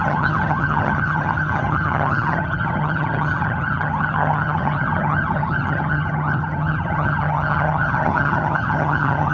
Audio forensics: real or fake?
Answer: fake